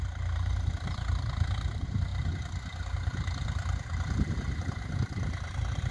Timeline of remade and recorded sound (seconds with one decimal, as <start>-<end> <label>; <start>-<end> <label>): 0.0-5.9 recorded